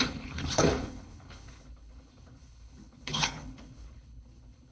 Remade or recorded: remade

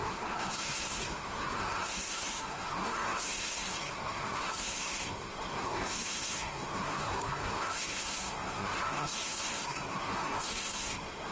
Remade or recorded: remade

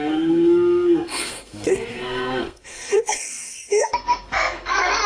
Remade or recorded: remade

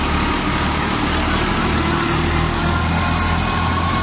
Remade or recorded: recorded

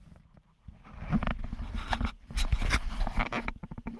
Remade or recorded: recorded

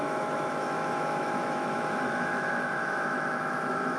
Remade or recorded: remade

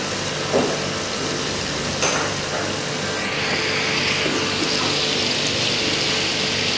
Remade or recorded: recorded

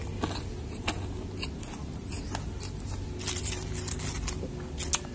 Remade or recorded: recorded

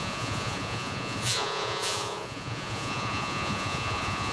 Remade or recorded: remade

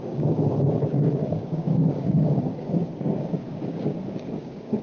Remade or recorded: remade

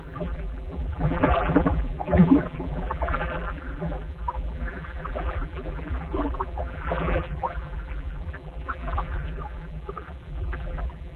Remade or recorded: remade